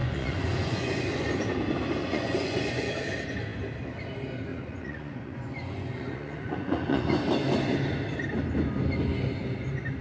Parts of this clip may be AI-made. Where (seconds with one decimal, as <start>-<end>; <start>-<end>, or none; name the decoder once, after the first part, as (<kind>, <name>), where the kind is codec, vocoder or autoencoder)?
0.0-1.3 (vocoder, Vocos); 2.0-2.9; 4.5-7.2